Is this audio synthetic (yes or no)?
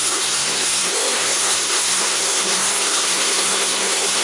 yes